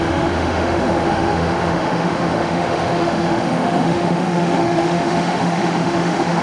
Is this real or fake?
fake